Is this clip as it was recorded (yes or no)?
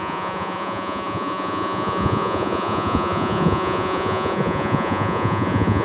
no